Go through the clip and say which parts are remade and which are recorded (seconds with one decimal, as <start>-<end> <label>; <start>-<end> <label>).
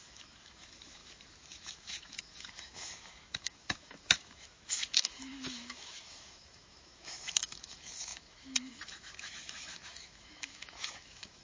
0.0-11.4 remade